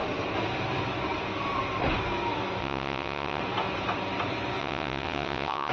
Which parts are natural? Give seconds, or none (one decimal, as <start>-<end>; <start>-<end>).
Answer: 0.0-2.6; 3.4-4.6